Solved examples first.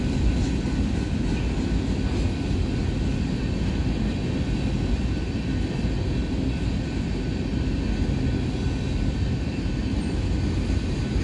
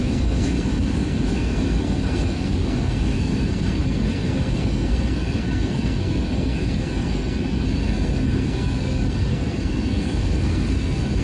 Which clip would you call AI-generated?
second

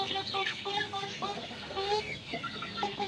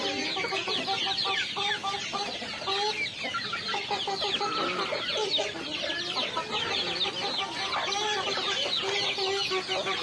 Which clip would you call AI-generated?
first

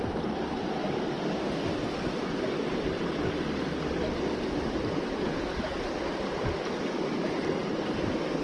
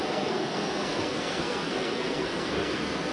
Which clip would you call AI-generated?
second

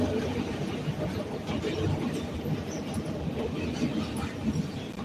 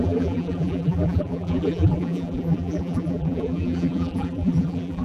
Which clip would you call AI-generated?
second